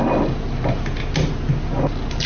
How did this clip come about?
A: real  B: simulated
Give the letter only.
A